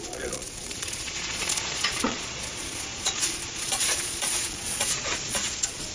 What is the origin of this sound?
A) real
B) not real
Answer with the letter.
B